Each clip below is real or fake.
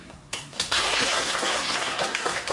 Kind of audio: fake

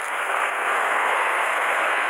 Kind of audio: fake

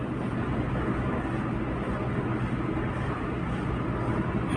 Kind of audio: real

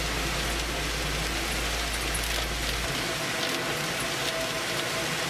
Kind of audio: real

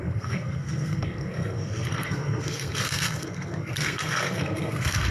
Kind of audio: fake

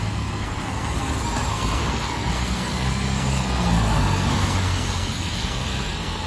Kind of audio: fake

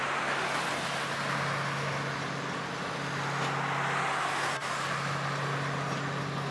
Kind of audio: real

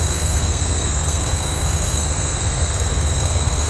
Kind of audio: fake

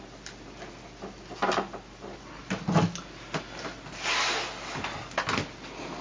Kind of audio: real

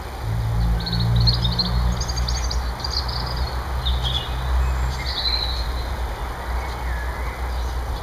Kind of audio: real